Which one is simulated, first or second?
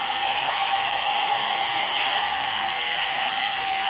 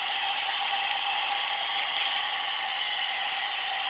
first